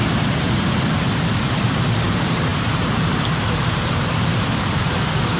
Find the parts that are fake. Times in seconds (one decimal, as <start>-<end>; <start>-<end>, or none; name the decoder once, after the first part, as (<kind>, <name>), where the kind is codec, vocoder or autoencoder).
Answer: 0.0-2.5 (vocoder, BigVGAN v2); 3.0-4.3; 4.8-5.4